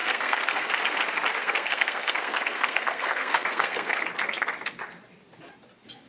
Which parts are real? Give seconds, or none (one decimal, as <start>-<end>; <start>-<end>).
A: 0.7-1.4; 4.0-6.1